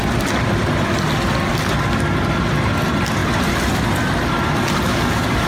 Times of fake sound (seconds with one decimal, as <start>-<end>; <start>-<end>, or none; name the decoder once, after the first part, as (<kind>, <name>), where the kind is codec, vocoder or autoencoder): 3.2-5.5 (vocoder, BigVGAN v2)